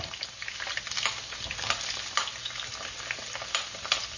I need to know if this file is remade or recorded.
recorded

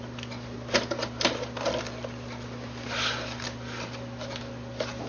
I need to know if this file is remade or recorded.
recorded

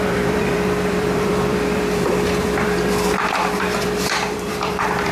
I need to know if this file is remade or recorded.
remade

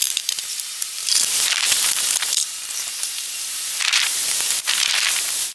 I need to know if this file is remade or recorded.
remade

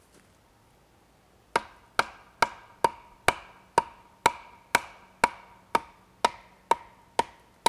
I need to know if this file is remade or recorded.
recorded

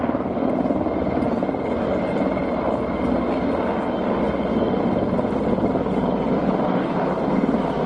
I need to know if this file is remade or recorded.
recorded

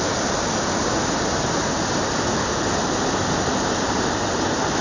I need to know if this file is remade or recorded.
recorded